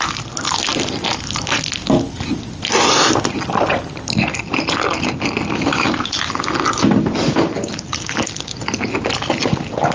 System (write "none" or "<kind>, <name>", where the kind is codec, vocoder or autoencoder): none